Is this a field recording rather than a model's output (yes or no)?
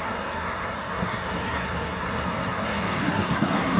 no